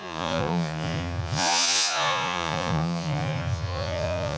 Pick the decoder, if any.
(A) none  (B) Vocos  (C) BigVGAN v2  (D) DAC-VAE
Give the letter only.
B